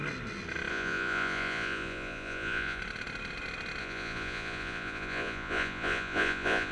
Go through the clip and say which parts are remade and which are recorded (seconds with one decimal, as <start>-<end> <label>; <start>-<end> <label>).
0.0-0.7 recorded; 0.7-2.8 remade; 2.8-3.8 recorded; 3.8-6.7 remade